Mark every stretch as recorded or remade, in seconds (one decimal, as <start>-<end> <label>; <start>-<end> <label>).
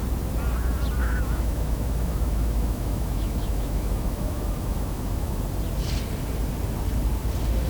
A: 0.0-1.0 recorded; 1.0-5.4 remade; 5.4-7.7 recorded